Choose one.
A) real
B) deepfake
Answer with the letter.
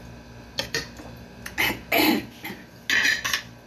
A